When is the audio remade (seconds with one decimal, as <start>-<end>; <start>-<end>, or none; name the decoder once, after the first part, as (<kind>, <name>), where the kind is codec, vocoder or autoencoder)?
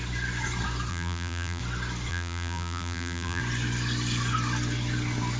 0.9-1.6 (vocoder, BigVGAN v2); 2.1-3.4